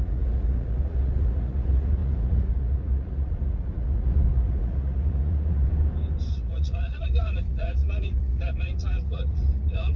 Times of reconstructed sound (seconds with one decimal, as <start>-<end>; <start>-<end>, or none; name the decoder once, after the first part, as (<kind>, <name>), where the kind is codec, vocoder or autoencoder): 0.0-5.7 (vocoder, Vocos); 6.3-10.0